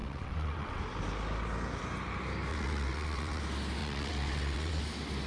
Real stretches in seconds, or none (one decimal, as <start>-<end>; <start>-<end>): 0.8-2.5; 3.4-3.8; 4.8-5.3